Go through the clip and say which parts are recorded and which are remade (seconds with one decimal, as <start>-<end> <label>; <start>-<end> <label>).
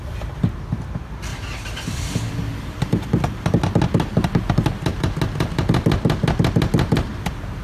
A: 0.0-1.3 recorded; 1.3-2.3 remade; 2.3-7.6 recorded